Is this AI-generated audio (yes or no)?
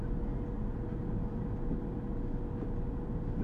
no